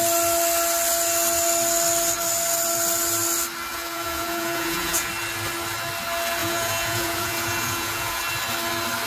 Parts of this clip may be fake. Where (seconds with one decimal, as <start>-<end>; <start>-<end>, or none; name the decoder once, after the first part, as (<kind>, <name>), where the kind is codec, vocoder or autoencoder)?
3.7-5.1 (vocoder, Vocos); 6.4-8.2